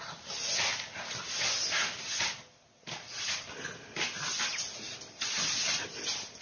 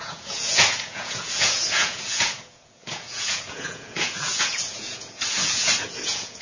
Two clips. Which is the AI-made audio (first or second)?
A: second